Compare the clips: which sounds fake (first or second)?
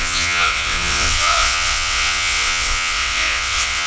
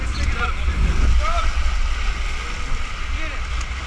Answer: first